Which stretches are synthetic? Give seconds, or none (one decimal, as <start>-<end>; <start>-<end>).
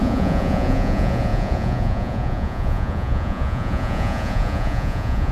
0.0-5.3